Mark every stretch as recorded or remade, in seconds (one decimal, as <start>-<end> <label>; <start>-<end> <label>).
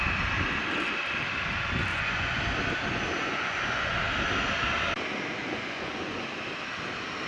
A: 0.0-1.9 recorded; 1.9-2.4 remade; 2.4-3.2 recorded; 3.2-4.0 remade; 4.0-5.4 recorded; 5.4-6.2 remade; 6.2-7.3 recorded